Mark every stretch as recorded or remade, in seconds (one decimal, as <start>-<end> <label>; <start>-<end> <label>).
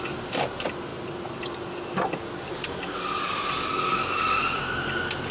0.0-5.3 recorded